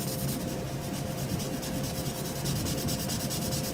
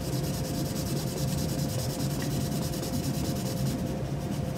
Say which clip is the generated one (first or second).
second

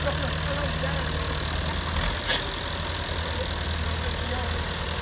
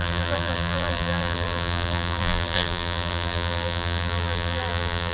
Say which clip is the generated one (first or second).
second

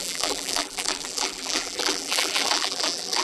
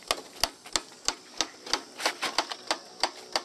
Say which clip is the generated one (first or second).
first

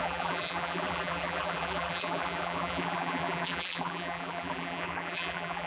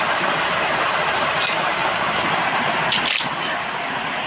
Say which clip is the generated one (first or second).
first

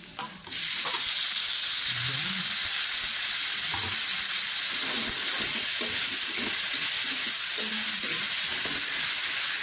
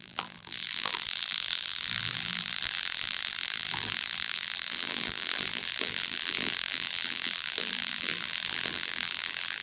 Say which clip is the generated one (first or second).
second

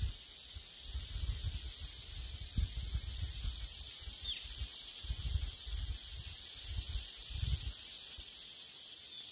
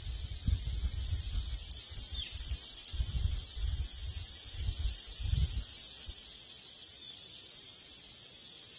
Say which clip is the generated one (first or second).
second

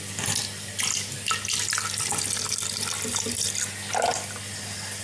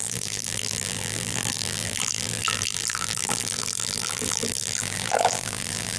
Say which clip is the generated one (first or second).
second